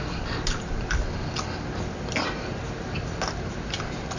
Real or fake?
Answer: real